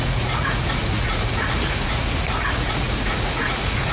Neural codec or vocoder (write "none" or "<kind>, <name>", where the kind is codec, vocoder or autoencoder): vocoder, Vocos